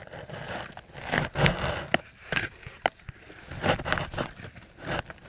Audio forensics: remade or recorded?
recorded